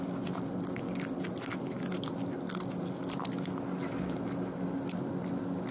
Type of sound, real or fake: real